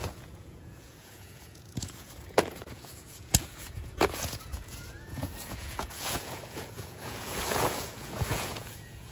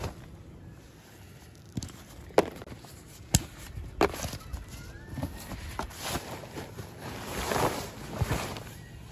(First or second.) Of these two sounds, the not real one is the first